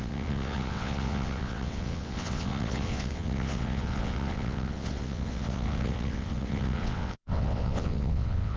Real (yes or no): no